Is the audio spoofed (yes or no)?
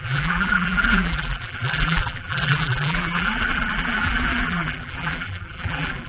yes